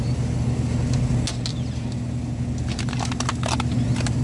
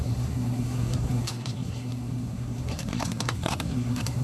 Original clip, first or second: first